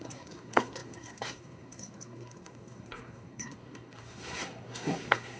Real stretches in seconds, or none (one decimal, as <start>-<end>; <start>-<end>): none